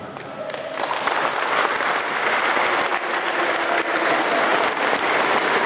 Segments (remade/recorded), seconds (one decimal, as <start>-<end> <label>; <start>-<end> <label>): 0.0-5.7 recorded